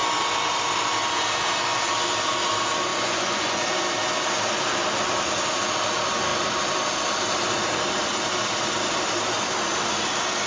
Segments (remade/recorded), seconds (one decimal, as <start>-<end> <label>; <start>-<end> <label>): 0.0-2.9 recorded; 2.9-3.6 remade; 3.6-10.5 recorded